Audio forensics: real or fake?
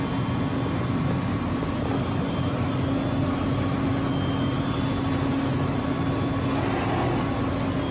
real